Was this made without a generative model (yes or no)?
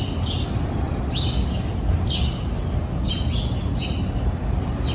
yes